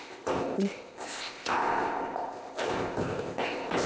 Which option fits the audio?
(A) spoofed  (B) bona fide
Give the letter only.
A